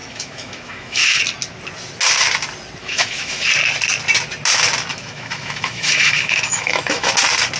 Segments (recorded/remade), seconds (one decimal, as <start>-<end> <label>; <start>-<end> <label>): 0.0-1.2 remade; 1.2-2.8 recorded; 2.8-3.5 remade; 3.5-4.9 recorded; 4.9-7.1 remade; 7.1-7.6 recorded